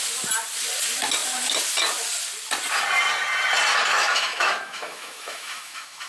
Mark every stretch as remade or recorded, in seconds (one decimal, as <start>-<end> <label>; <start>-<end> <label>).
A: 0.0-3.9 recorded; 3.9-6.1 remade